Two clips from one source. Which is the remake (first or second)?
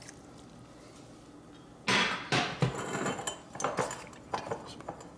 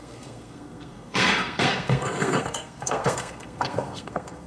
second